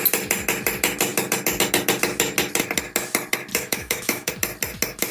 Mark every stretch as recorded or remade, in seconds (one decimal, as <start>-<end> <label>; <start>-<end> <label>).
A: 0.0-3.5 recorded; 3.5-4.3 remade; 4.3-5.1 recorded